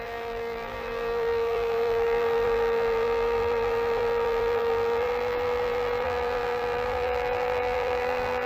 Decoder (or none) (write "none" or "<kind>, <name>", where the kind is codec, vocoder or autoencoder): vocoder, BigVGAN v2